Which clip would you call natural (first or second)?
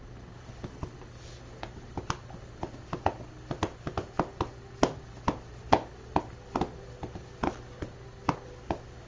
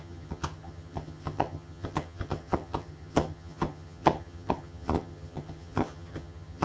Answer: first